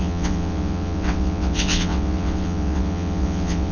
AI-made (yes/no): yes